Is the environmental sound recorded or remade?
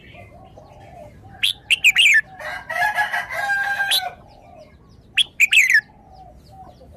recorded